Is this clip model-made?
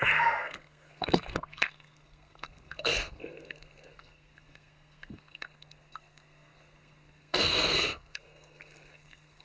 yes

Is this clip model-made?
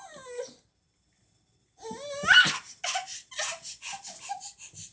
no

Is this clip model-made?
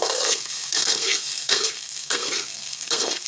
yes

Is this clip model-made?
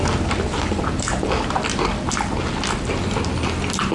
no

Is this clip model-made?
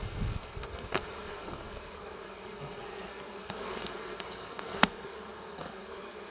yes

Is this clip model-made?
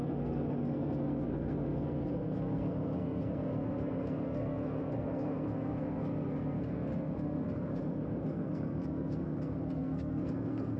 yes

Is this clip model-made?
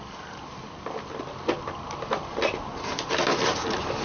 no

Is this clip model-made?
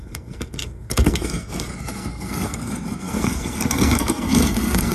yes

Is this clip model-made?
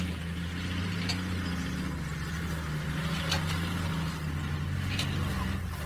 no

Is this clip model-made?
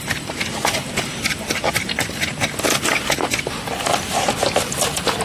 no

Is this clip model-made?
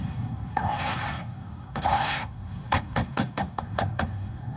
yes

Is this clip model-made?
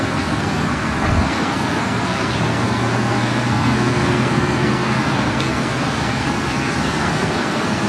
yes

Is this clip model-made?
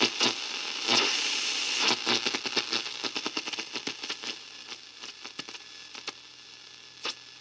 no